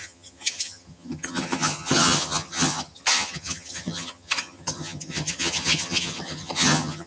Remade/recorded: remade